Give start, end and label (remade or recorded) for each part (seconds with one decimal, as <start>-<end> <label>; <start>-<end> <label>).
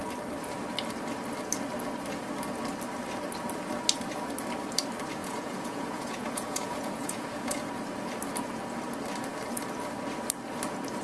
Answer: 0.0-5.2 recorded; 5.2-7.8 remade; 7.8-11.0 recorded